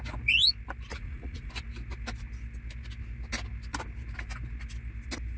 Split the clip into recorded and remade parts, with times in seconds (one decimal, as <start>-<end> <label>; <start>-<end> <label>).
0.0-0.9 recorded; 0.9-1.5 remade; 1.5-5.4 recorded